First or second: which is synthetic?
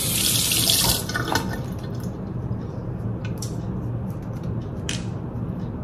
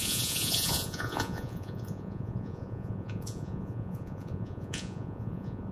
second